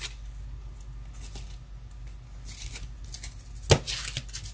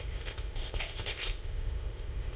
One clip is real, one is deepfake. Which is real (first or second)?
first